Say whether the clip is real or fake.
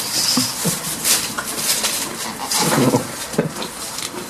real